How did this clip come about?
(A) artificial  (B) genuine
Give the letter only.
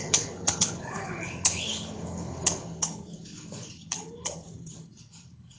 A